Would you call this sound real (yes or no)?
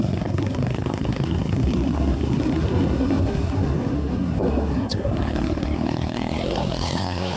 no